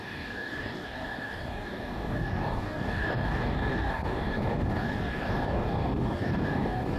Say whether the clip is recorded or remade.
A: remade